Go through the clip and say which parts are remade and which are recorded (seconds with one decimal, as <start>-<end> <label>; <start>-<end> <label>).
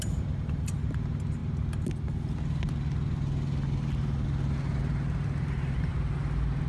0.0-1.4 remade; 1.4-5.4 recorded; 5.4-5.9 remade; 5.9-6.7 recorded